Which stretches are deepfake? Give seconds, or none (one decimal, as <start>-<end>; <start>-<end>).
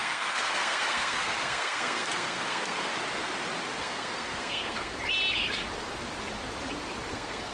0.0-2.9; 3.8-4.9; 7.1-7.5